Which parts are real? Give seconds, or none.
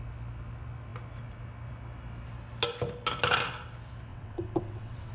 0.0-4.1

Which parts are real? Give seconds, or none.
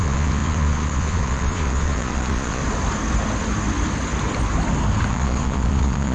2.6-5.1